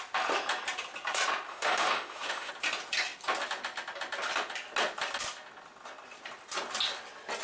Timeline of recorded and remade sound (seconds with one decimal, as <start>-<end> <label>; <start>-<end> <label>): 0.0-1.5 recorded; 1.5-2.5 remade; 2.5-7.4 recorded